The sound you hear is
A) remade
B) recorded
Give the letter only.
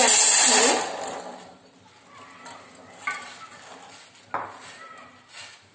B